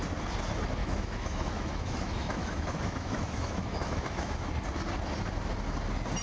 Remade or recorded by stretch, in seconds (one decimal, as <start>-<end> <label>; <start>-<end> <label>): 0.0-0.8 recorded; 0.8-4.5 remade; 4.5-6.2 recorded